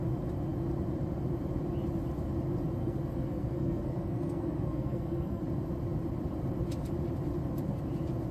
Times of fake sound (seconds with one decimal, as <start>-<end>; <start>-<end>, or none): 2.8-5.4